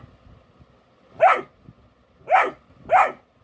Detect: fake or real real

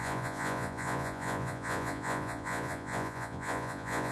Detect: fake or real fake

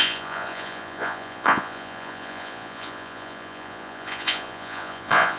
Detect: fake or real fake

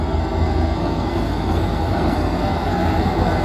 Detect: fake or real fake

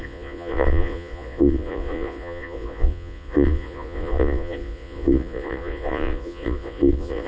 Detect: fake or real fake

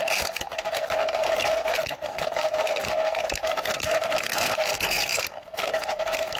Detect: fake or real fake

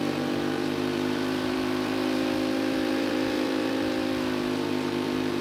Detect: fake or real fake